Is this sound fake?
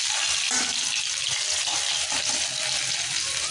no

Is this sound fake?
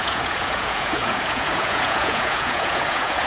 yes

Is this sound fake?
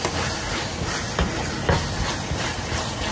no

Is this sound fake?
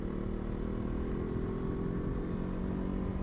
no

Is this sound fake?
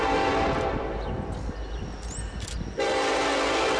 no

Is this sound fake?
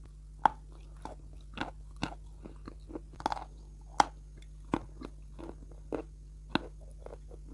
no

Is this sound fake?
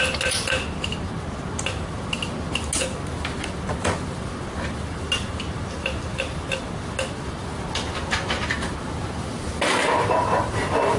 no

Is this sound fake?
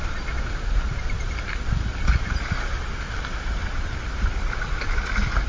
no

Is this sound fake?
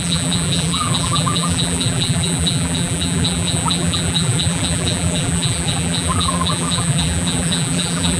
yes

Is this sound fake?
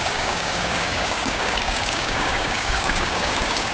yes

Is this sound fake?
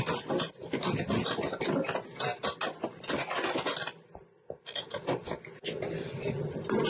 no